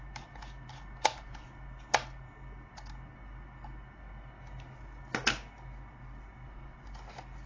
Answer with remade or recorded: recorded